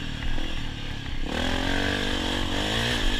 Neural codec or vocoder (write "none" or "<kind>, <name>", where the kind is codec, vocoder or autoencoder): none